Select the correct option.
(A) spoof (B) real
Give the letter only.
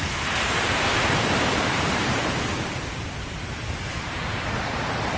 A